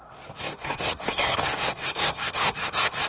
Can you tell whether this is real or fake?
fake